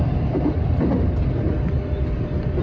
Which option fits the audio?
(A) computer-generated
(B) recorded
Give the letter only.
B